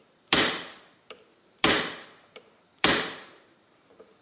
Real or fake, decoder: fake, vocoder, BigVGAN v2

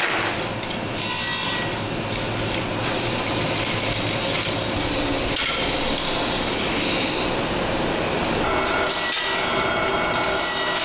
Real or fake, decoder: real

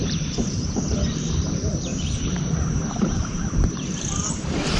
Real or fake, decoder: fake, vocoder, BigVGAN v2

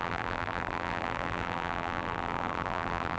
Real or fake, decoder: fake, vocoder, BigVGAN v2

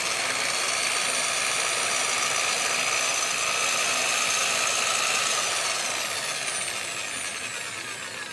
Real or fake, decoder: real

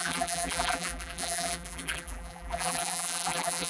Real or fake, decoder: fake, vocoder, BigVGAN v2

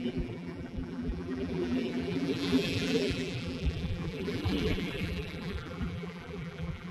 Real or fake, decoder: fake, vocoder, BigVGAN v2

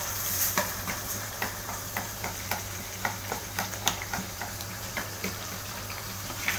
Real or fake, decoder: fake, vocoder, BigVGAN v2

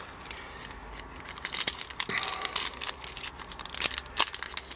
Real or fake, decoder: real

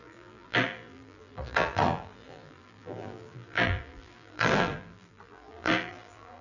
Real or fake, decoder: fake, vocoder, BigVGAN v2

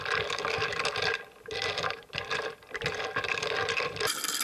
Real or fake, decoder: fake, vocoder, BigVGAN v2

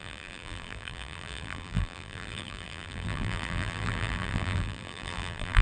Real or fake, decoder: fake, vocoder, BigVGAN v2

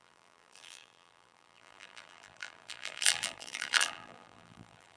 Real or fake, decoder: fake, vocoder, BigVGAN v2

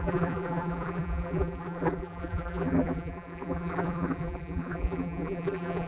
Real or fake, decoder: fake, vocoder, BigVGAN v2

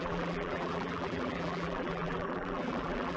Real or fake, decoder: fake, vocoder, BigVGAN v2